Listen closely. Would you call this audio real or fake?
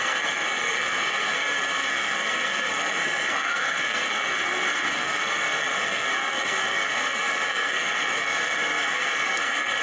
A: fake